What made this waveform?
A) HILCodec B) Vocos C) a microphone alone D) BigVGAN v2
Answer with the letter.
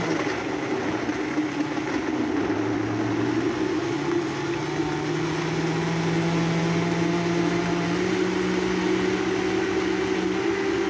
C